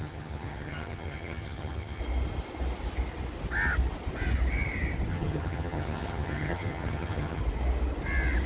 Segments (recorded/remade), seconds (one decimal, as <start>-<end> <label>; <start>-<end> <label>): 0.0-2.0 remade; 2.0-5.1 recorded; 5.1-7.4 remade; 7.4-8.5 recorded